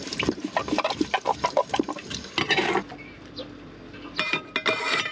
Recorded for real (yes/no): yes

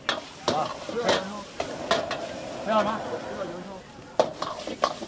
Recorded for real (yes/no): yes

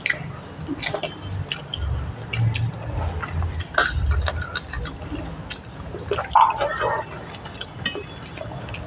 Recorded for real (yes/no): yes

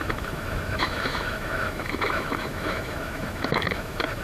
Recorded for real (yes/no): no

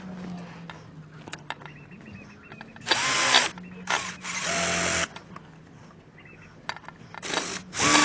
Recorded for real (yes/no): yes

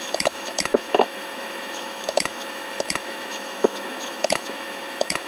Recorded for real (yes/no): no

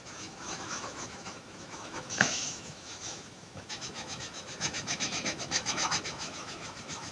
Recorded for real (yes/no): no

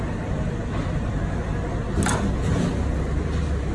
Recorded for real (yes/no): yes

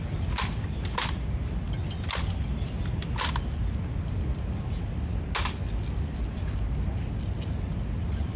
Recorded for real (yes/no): yes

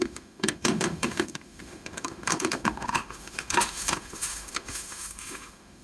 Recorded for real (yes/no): no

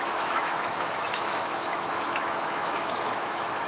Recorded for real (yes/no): no